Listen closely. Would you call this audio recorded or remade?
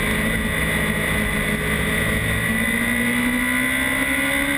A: recorded